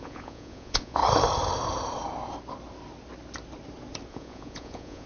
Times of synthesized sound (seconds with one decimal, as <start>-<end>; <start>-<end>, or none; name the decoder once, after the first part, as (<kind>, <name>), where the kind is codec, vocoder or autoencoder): 0.0-1.0 (vocoder, Vocos); 4.1-5.1